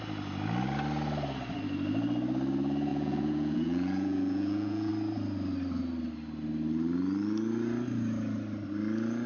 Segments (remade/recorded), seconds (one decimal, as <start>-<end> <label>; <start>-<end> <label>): 0.0-2.9 recorded; 2.9-4.9 remade; 4.9-9.3 recorded